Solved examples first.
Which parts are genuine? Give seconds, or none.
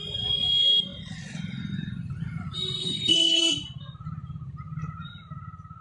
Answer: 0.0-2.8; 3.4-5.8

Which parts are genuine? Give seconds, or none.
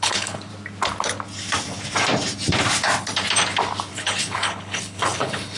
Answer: 0.5-3.9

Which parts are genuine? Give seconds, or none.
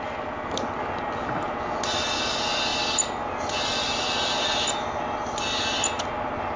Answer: 0.0-6.6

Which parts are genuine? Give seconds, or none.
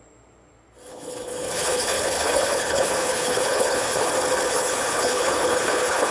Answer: 0.0-0.9; 4.1-4.5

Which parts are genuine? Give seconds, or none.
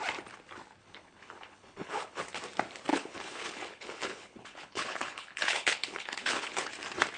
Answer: 0.0-0.8; 2.2-2.9; 6.7-7.2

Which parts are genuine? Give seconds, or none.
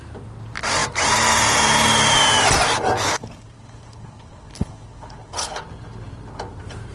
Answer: 0.0-3.1; 5.6-6.9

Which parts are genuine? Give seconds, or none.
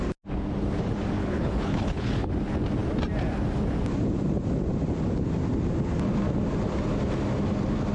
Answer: 0.0-1.2; 2.3-7.9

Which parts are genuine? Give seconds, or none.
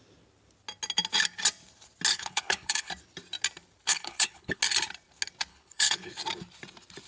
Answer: 0.0-2.1; 2.9-3.9; 4.6-5.5; 6.1-7.1